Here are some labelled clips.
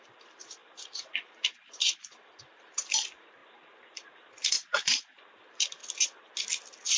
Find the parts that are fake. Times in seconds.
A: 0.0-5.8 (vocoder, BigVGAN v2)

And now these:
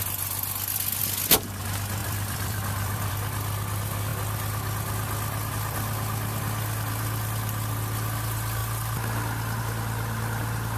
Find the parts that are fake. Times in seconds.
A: 2.0-3.1 (vocoder, BigVGAN v2)

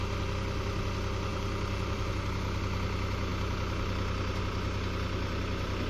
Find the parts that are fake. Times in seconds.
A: 1.3-2.1 (vocoder, BigVGAN v2)